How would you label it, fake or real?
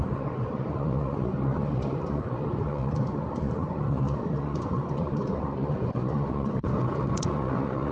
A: fake